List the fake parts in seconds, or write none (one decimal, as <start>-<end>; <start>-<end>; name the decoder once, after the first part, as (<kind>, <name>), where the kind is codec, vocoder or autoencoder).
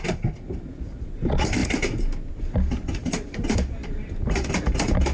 none